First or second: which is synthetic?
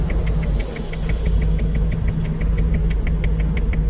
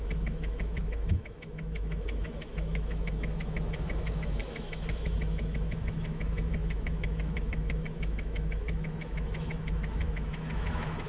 second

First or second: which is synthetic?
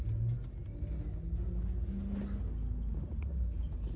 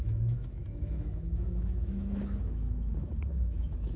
second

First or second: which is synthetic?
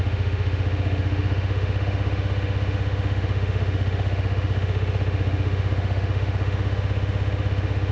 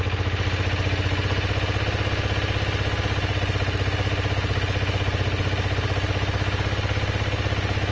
first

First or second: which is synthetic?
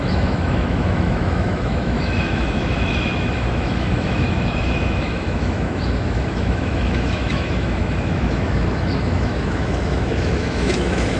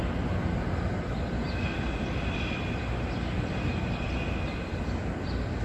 first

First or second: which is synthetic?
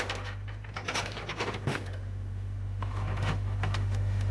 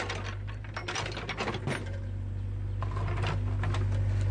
first